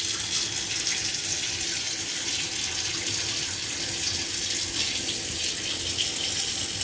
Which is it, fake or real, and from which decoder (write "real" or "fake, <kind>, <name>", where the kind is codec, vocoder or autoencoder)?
real